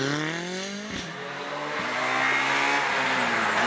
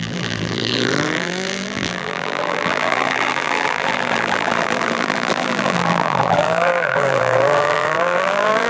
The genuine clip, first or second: first